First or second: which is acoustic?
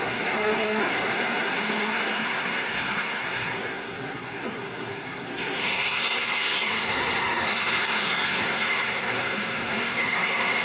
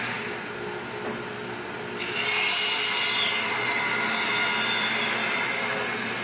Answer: second